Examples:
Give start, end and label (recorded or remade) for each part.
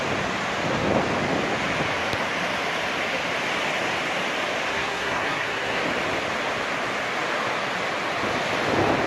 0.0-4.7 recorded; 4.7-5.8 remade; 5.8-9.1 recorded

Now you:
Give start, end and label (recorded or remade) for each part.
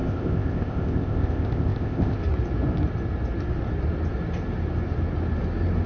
0.0-2.2 remade; 2.2-5.9 recorded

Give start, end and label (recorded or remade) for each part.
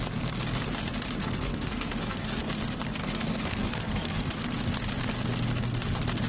0.0-1.2 recorded; 1.2-2.4 remade; 2.4-3.0 recorded; 3.0-4.4 remade; 4.4-6.3 recorded